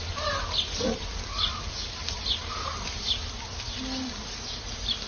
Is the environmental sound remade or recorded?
recorded